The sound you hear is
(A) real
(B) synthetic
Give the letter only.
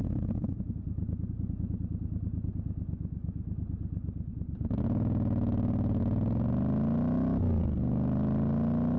A